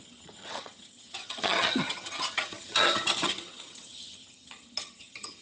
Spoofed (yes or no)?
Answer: yes